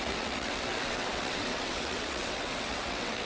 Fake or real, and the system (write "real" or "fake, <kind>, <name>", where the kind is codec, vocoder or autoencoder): fake, vocoder, WaveNeXt